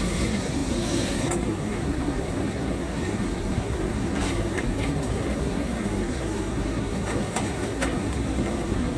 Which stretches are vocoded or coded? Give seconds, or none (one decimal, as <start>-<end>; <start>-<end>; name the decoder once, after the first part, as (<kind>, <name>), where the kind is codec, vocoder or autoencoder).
0.0-9.0 (codec, SNAC)